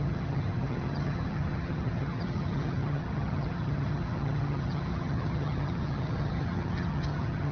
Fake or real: fake